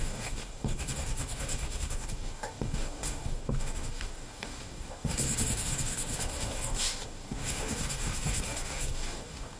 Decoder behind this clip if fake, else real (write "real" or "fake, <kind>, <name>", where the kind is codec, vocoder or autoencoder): fake, codec, DAC